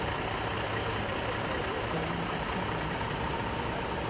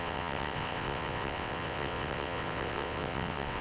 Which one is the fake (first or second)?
second